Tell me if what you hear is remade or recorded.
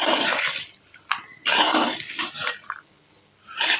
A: recorded